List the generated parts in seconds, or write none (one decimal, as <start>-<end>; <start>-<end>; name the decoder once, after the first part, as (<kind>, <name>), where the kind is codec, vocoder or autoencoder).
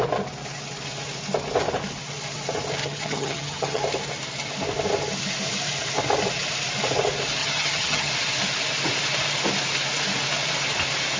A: 2.8-3.8 (vocoder, HiFi-GAN); 7.4-8.1